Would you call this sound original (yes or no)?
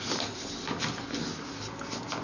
yes